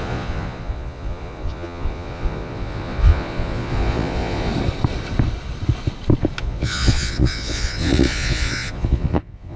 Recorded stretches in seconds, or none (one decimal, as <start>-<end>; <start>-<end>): 4.5-6.4